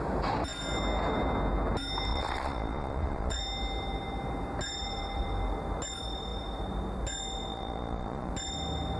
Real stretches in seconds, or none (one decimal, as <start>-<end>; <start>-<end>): 0.0-2.1; 3.4-7.5; 8.3-9.0